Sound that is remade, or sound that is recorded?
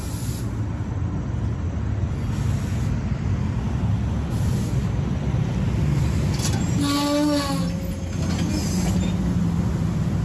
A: recorded